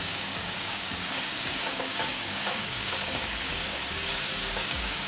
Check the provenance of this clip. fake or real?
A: fake